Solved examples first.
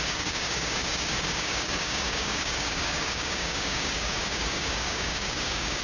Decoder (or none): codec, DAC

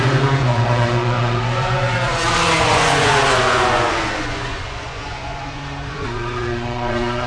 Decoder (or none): vocoder, Vocos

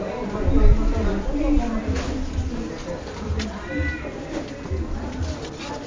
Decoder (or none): none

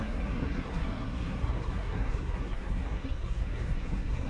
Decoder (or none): codec, SNAC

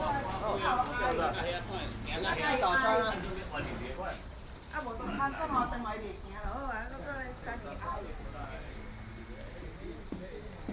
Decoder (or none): none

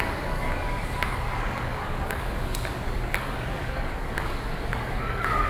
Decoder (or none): codec, DAC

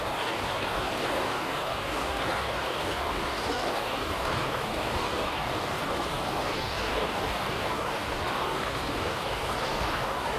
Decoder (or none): codec, DAC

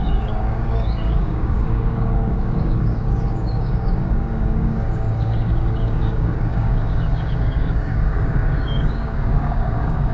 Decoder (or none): codec, DAC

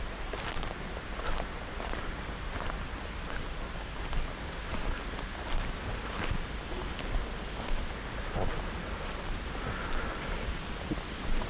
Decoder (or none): none